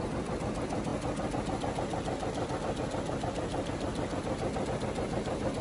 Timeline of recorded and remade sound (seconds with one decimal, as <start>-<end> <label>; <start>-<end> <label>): 0.0-5.6 recorded